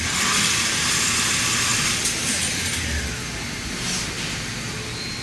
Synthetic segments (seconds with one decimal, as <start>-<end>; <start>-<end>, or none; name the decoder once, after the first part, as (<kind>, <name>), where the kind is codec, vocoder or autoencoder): 0.0-1.7 (vocoder, BigVGAN v2); 2.3-5.2